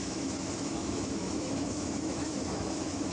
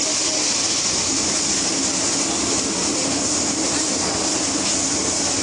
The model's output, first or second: first